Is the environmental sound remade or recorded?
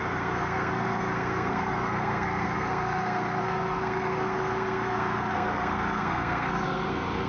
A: remade